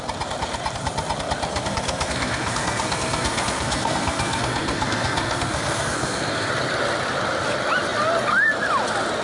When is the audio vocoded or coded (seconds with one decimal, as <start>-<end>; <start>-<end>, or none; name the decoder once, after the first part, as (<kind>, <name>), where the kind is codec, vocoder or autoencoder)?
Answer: 1.5-6.5 (codec, SNAC)